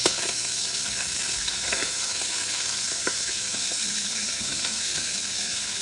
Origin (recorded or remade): remade